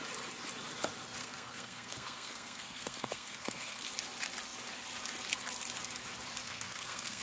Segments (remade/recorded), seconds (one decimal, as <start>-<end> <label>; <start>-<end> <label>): 0.0-1.2 recorded; 1.2-3.8 remade; 3.8-6.4 recorded; 6.4-7.2 remade

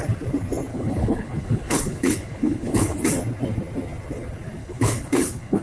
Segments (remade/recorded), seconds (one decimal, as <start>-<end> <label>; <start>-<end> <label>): 0.0-0.7 recorded; 0.7-3.0 remade; 3.0-4.6 recorded; 4.6-5.6 remade